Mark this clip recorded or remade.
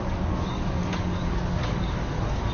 remade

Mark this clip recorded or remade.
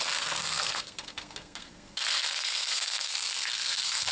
remade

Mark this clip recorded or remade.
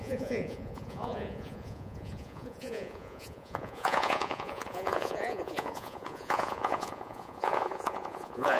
remade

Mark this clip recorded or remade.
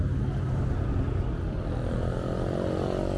recorded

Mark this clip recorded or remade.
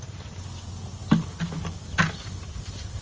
recorded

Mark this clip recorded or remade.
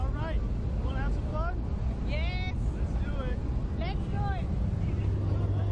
recorded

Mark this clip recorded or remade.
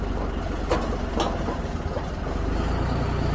recorded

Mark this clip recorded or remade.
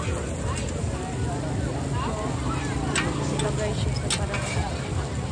recorded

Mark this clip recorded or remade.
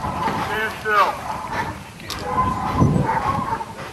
remade